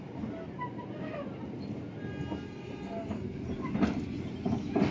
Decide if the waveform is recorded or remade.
recorded